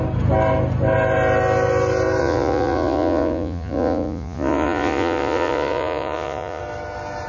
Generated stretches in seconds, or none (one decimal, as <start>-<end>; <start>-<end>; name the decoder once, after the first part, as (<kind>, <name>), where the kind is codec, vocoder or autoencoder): 2.2-6.6 (vocoder, Vocos)